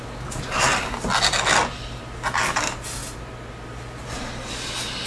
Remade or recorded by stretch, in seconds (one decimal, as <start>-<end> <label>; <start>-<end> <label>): 0.0-5.1 recorded